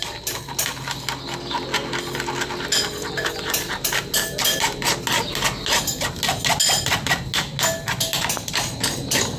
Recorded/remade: recorded